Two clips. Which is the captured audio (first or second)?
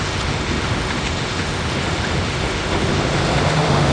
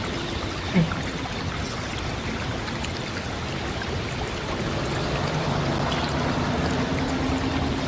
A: second